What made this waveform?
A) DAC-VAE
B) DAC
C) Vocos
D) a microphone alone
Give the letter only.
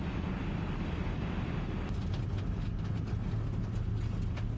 D